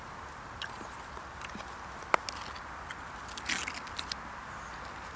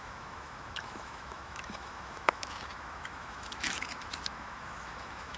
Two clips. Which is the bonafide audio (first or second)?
first